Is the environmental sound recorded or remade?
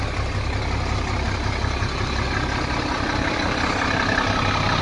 recorded